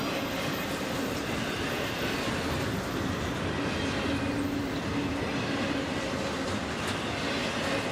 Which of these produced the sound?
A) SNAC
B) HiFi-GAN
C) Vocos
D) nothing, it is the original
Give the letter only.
D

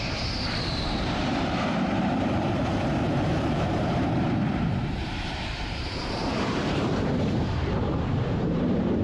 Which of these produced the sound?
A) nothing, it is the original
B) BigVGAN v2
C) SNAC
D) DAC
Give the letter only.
B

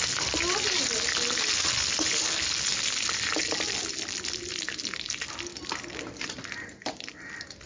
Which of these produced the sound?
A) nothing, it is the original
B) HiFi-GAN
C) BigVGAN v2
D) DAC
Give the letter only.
A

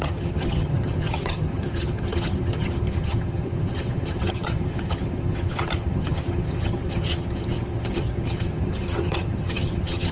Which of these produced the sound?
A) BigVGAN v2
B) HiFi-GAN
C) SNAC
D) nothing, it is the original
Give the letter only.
B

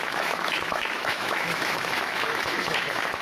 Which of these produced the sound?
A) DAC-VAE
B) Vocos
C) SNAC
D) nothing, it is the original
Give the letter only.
A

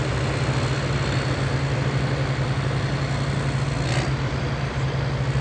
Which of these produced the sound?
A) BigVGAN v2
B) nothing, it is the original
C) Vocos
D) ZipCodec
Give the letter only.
B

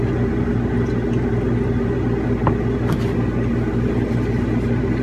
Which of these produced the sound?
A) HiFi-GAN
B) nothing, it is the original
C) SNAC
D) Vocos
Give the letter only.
B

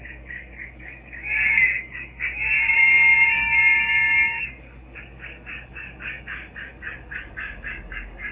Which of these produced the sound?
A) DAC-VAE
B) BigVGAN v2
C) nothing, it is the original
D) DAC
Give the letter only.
D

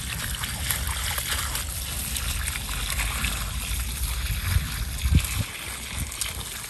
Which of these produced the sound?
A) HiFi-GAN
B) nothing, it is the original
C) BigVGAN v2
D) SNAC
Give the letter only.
B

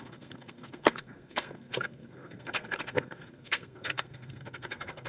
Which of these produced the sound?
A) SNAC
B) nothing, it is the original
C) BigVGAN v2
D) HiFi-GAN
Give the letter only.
A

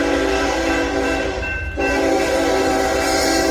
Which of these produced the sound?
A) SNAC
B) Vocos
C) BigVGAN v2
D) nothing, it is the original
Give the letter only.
C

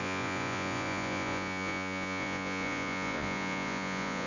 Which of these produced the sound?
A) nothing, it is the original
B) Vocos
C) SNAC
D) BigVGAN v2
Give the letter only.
B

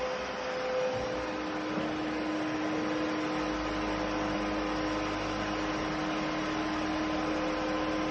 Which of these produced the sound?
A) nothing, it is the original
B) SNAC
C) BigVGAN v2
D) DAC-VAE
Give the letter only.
A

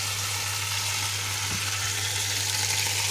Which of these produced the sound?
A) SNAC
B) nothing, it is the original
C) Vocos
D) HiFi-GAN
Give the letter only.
B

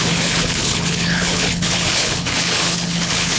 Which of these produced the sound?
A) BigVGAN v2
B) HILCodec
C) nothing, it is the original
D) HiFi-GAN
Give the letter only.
B